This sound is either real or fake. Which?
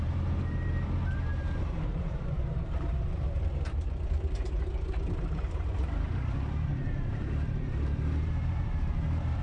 fake